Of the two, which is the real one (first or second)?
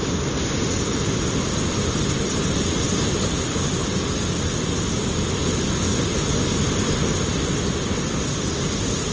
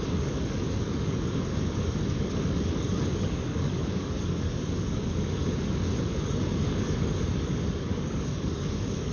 first